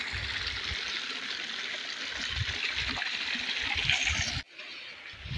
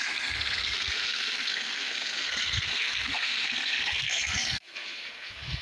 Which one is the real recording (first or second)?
first